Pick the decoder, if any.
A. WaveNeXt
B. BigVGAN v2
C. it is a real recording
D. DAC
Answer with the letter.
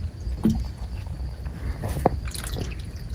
C